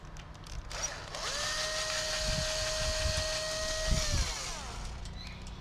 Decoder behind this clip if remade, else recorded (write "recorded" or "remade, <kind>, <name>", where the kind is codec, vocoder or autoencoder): recorded